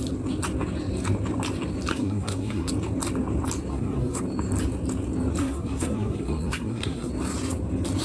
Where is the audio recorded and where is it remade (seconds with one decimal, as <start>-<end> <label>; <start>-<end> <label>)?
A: 0.0-1.9 recorded; 1.9-2.7 remade; 2.7-3.7 recorded; 3.7-4.2 remade; 4.2-5.4 recorded; 5.4-7.1 remade; 7.1-8.0 recorded